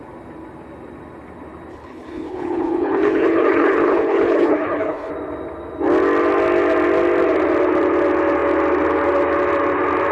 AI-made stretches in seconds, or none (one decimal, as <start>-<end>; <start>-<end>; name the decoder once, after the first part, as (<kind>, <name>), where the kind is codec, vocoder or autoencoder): 1.7-5.1 (codec, HILCodec)